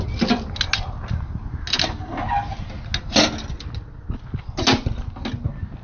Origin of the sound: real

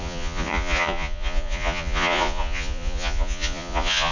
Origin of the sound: fake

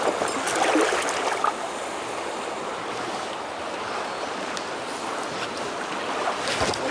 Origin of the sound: real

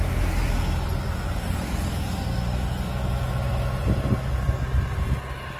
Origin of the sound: real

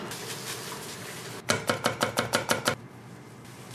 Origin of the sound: real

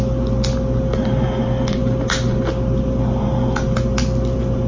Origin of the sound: real